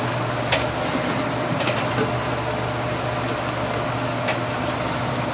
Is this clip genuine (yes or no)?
yes